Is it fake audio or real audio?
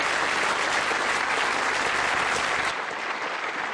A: real